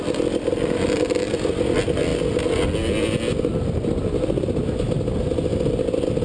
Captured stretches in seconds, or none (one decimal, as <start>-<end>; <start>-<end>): 0.0-6.2